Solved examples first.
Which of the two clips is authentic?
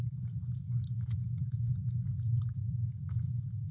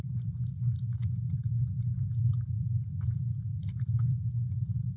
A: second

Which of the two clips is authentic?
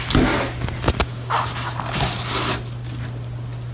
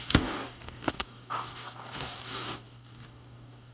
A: first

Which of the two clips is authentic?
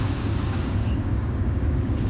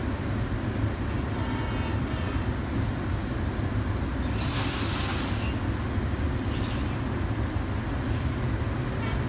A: second